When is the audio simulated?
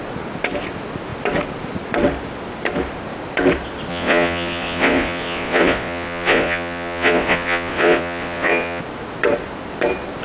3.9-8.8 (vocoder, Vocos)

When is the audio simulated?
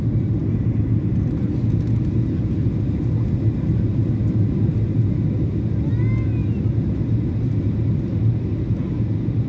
none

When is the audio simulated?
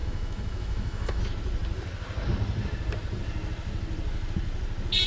0.0-1.2 (autoencoder, DAC-VAE)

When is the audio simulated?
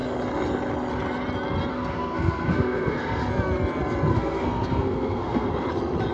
1.7-3.3 (codec, SNAC); 4.1-5.5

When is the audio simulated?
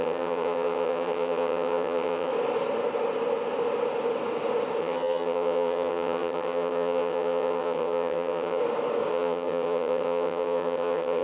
0.0-2.3 (vocoder, HiFi-GAN); 4.8-8.6; 9.1-11.2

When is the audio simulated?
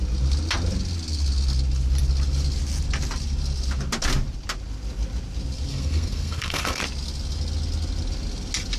5.7-6.8 (codec, SNAC)